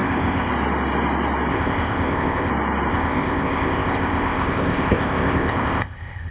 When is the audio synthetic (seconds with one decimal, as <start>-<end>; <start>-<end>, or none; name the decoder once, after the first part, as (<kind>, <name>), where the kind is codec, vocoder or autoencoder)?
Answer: 0.0-0.5 (codec, ZipCodec); 1.5-2.5; 2.9-6.3